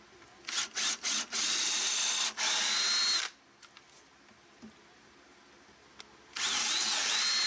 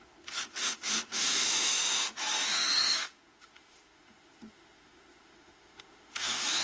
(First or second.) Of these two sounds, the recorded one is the first